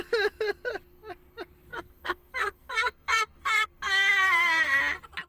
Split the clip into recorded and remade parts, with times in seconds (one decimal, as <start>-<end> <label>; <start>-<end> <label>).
0.0-1.7 recorded; 1.7-4.8 remade; 4.8-5.3 recorded

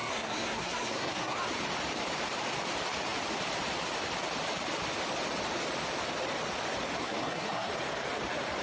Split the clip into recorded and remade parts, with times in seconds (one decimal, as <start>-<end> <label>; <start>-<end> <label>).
0.0-1.4 remade; 1.4-7.0 recorded; 7.0-7.7 remade; 7.7-8.6 recorded

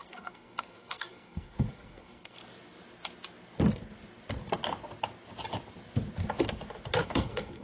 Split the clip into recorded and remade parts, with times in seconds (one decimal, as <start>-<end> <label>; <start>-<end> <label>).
0.0-2.4 remade; 2.4-7.0 recorded; 7.0-7.6 remade

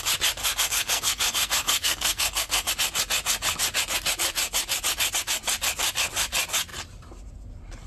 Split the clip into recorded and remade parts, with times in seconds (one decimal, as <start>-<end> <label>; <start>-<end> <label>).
0.0-0.4 recorded; 0.4-2.7 remade; 2.7-7.9 recorded

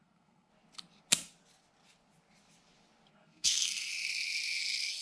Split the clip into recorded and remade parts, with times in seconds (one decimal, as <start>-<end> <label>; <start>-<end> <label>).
0.0-0.5 remade; 0.5-3.1 recorded; 3.1-3.9 remade; 3.9-5.0 recorded

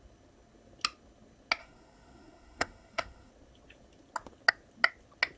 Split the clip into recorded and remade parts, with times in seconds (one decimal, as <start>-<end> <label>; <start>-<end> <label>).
0.0-1.6 recorded; 1.6-3.3 remade; 3.3-5.4 recorded

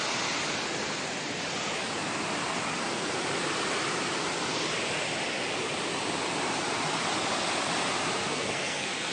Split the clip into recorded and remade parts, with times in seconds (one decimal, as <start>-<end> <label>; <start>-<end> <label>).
0.0-8.2 recorded; 8.2-9.1 remade

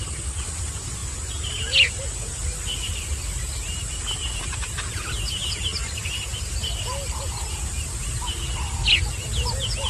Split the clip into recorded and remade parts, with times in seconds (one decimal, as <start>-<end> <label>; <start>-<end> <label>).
0.0-9.9 recorded